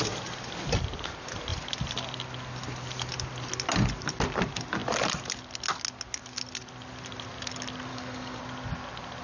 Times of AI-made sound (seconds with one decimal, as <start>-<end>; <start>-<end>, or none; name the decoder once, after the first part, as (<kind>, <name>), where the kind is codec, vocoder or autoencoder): 7.9-8.4 (codec, DAC)